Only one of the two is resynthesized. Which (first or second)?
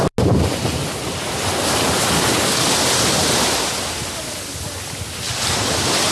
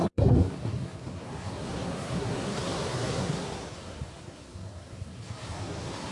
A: second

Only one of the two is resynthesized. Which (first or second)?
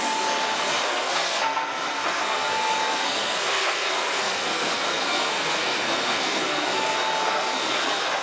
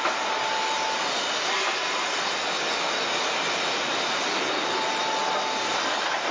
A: first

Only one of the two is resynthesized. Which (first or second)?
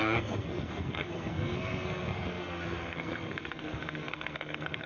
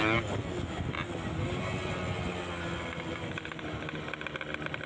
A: first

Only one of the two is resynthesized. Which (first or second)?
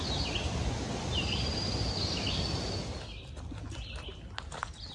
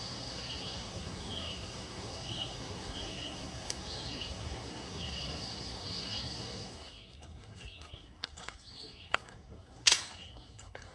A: second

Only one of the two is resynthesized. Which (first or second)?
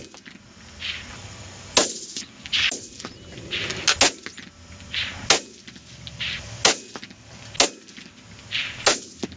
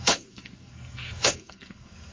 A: second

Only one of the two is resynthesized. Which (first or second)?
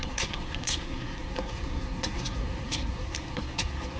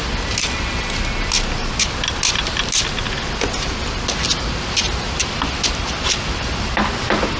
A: first